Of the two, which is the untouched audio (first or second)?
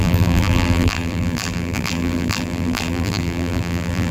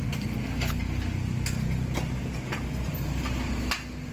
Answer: second